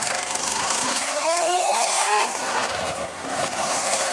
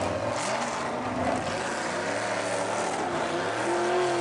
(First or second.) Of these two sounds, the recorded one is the second